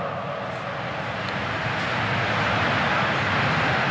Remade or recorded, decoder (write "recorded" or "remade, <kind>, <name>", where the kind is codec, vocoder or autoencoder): recorded